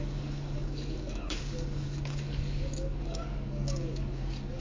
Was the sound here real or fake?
fake